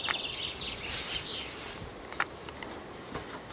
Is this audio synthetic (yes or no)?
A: no